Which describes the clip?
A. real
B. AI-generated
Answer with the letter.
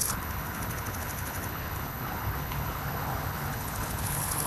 B